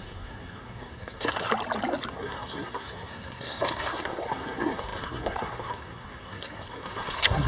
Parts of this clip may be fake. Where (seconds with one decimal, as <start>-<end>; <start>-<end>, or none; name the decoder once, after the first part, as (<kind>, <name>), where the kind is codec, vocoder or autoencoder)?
0.0-1.5 (codec, SNAC); 2.1-7.5

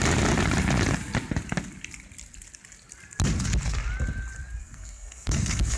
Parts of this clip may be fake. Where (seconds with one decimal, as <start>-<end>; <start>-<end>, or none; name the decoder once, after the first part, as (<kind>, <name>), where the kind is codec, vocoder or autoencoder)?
4.6-5.8 (codec, SNAC)

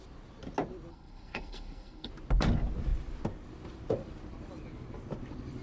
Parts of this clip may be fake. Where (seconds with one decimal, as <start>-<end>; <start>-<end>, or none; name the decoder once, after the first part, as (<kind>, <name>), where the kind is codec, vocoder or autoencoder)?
0.9-2.1 (codec, SNAC)